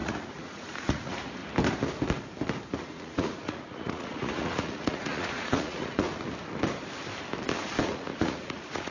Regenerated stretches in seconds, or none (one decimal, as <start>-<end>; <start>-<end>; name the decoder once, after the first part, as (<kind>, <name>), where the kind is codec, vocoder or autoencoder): 0.0-1.4 (vocoder, Vocos); 2.8-6.1; 7.8-8.9